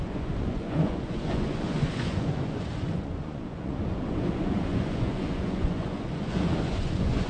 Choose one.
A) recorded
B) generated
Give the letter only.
B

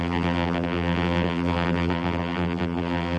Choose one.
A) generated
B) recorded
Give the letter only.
A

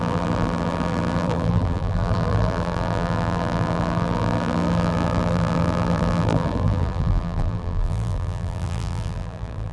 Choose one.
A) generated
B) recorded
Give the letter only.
A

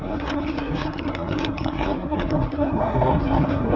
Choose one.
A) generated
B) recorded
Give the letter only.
A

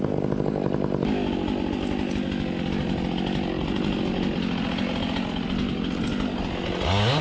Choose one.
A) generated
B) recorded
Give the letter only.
B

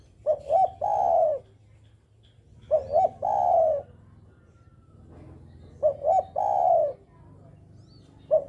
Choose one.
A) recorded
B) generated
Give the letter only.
A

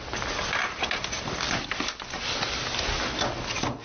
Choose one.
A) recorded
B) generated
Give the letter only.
A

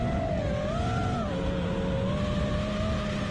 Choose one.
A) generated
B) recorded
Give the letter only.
B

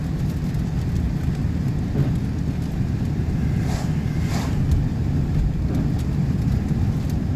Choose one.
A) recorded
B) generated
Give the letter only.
A